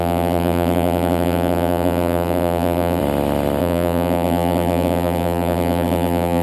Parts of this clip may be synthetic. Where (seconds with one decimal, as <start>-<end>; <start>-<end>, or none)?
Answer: 0.0-3.0; 3.6-6.4